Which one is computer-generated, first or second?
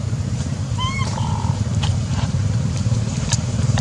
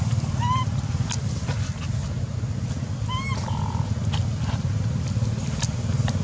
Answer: first